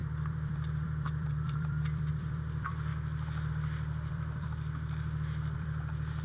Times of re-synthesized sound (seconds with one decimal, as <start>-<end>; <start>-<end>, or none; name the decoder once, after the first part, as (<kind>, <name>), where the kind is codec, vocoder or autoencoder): 0.0-2.9 (vocoder, BigVGAN v2); 3.5-6.2